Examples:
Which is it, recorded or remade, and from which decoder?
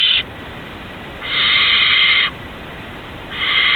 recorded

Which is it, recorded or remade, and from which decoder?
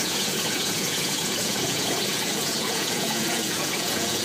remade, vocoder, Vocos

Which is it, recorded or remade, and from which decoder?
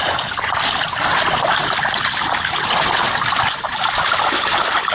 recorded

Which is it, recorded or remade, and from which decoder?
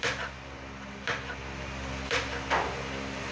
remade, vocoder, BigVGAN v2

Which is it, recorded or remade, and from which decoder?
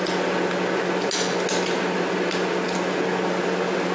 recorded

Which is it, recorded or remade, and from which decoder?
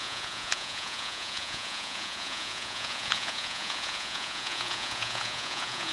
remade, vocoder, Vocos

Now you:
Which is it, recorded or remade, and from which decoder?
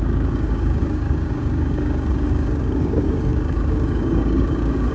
remade, codec, DAC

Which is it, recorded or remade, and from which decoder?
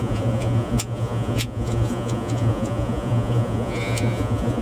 remade, vocoder, Vocos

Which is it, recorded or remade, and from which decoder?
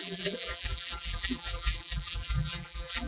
remade, vocoder, BigVGAN v2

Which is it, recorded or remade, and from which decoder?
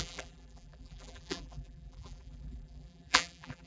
remade, vocoder, BigVGAN v2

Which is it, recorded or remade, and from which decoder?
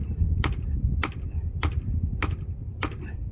recorded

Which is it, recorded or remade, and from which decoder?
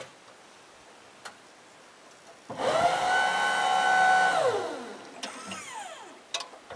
recorded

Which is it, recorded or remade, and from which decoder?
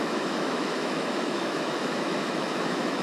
remade, autoencoder, DAC-VAE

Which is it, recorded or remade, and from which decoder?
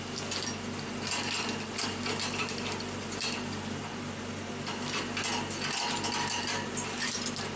recorded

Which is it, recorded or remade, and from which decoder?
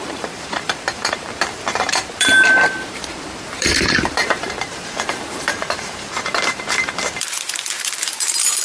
remade, vocoder, BigVGAN v2